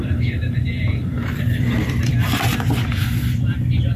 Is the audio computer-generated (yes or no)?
yes